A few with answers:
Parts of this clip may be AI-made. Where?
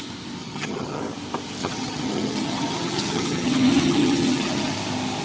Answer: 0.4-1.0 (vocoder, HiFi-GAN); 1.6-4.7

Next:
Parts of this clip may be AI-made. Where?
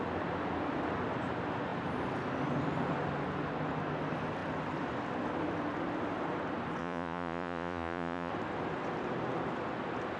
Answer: 6.8-8.3 (vocoder, Vocos)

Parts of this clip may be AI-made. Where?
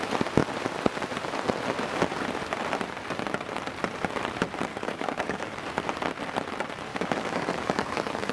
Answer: 4.7-5.6 (codec, DAC); 6.9-8.3